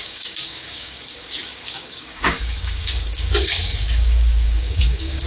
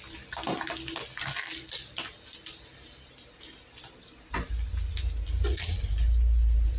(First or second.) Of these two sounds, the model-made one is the first